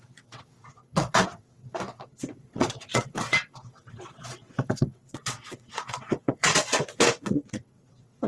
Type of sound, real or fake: fake